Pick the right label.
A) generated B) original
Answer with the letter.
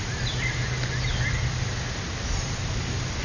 B